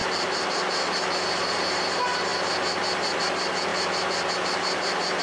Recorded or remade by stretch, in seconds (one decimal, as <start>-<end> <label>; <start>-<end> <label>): 0.0-0.5 remade; 0.5-5.2 recorded